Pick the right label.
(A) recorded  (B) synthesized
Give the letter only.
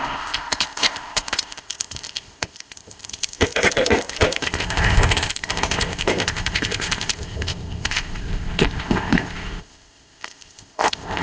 B